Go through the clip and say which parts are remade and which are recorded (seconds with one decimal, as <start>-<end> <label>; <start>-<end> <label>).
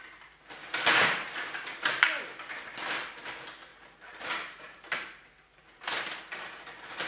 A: 0.0-0.6 recorded; 0.6-2.2 remade; 2.2-3.7 recorded; 3.7-5.9 remade; 5.9-7.1 recorded